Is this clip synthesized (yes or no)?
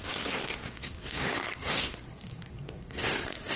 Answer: yes